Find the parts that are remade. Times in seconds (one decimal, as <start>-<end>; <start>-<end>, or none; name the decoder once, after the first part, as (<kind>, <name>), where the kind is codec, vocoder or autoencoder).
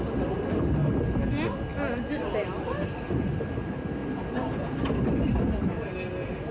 none